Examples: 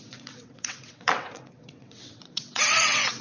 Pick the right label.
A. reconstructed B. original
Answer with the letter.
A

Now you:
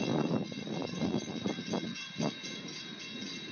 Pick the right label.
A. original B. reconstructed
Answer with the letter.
B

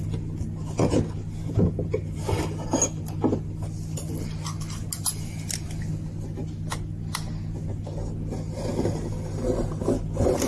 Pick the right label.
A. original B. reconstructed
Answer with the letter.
A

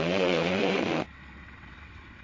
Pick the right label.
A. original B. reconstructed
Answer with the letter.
B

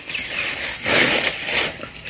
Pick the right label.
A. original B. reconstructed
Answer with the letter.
A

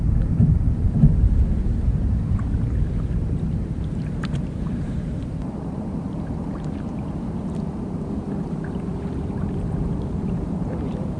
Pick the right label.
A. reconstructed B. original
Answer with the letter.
A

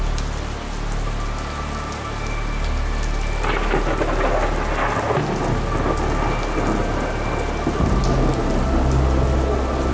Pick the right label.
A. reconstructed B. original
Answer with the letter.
B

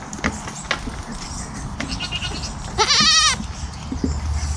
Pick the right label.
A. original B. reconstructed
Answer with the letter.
A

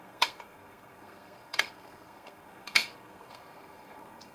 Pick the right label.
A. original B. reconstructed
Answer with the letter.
B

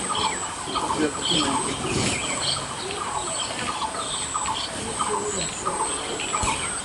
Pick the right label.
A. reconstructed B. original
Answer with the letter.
B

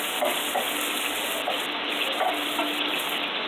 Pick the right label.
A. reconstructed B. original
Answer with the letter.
B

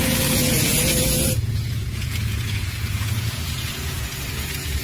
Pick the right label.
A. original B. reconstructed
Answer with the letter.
B